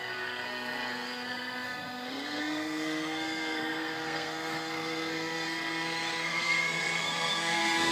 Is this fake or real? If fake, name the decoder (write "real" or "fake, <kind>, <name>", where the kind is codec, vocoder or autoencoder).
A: fake, codec, SNAC